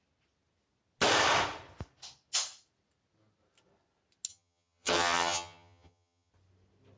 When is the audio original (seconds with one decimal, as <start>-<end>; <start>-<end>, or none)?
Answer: 0.0-4.3; 6.3-7.0